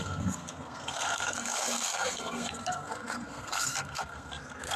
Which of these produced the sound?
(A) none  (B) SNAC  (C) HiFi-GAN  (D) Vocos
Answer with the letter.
B